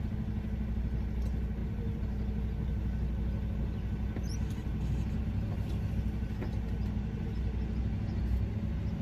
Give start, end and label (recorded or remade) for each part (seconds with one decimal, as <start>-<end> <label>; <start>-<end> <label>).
0.0-9.0 recorded